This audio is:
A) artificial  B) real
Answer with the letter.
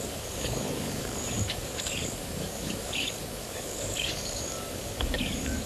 A